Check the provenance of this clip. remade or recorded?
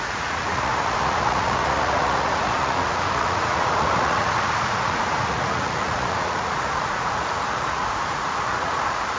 remade